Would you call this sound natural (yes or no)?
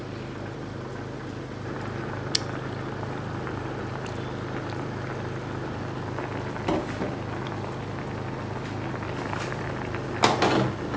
yes